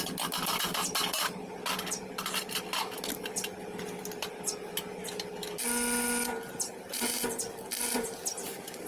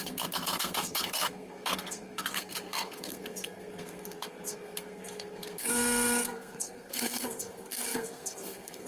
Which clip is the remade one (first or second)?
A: second